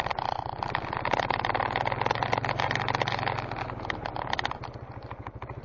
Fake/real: real